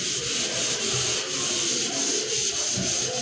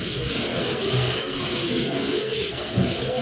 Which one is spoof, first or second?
second